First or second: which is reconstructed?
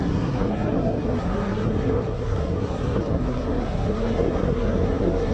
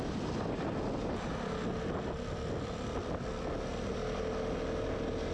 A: first